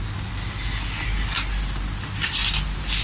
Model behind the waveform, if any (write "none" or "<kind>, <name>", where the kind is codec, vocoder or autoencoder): none